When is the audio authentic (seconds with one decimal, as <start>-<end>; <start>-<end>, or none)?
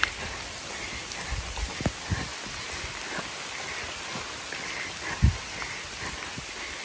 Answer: 0.0-6.8